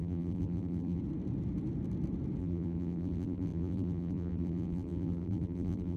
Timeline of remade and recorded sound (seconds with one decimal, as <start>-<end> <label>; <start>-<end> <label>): 0.0-1.0 remade; 1.0-2.4 recorded; 2.4-6.0 remade